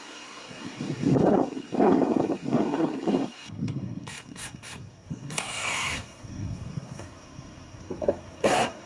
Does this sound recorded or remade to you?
remade